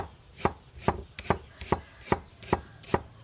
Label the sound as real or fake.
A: real